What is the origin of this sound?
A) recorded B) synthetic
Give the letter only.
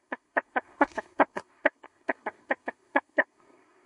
B